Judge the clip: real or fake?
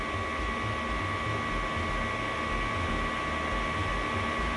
real